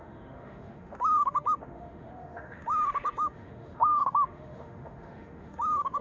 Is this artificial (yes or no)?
yes